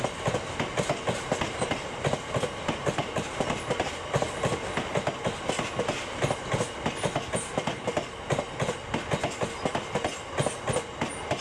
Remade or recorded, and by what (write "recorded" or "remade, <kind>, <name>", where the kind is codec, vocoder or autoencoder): recorded